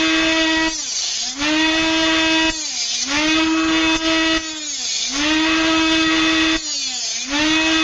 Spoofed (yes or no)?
no